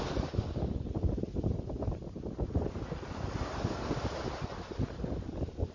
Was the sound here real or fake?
real